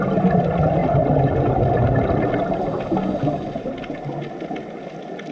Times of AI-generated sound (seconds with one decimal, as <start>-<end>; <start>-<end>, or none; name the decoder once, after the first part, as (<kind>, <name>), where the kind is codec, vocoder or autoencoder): none